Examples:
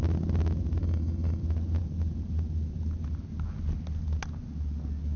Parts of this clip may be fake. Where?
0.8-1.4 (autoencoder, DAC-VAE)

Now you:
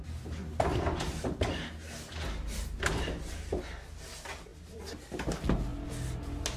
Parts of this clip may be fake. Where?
none

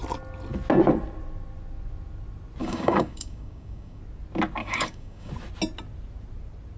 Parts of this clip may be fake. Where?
2.6-4.0 (codec, DAC); 4.6-5.3

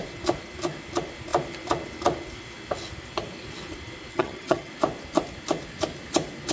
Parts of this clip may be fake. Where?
4.1-4.7 (vocoder, HiFi-GAN)

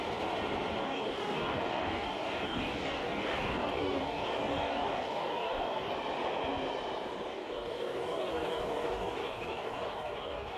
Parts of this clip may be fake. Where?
0.8-5.9 (codec, DAC); 7.3-10.6

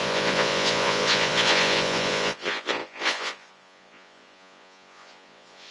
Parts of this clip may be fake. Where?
0.0-5.7 (vocoder, Vocos)

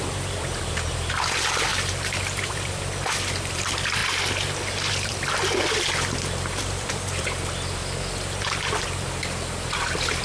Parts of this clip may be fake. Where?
0.0-4.0 (vocoder, BigVGAN v2); 4.9-7.8; 8.4-10.2

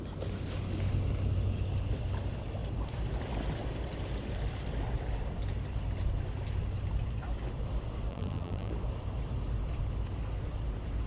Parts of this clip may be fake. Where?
8.1-8.7 (vocoder, BigVGAN v2)